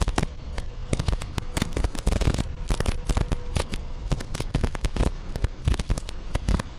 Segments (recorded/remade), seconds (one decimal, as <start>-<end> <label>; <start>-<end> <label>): 0.0-2.4 remade; 2.4-3.5 recorded; 3.5-6.8 remade